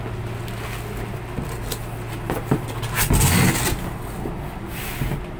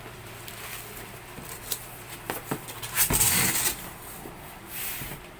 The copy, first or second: second